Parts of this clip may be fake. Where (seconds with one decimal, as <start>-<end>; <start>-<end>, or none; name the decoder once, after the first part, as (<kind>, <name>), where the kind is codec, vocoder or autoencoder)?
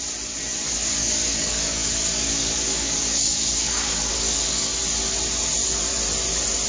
0.8-4.7 (codec, DAC)